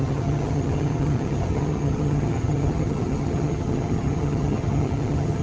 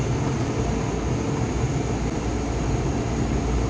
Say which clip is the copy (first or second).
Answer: first